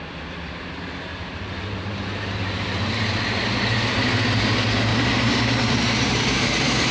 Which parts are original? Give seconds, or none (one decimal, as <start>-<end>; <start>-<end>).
0.0-1.1; 3.0-4.9